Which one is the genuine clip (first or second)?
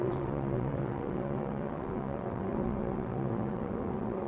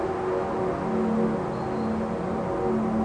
second